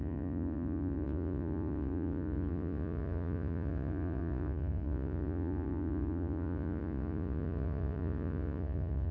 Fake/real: fake